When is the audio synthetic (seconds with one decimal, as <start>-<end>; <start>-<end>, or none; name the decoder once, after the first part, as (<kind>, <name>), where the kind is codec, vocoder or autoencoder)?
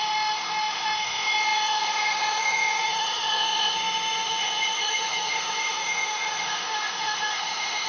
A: 0.0-7.9 (autoencoder, DAC-VAE)